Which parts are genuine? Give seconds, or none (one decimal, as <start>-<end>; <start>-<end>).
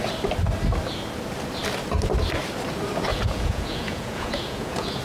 0.0-3.1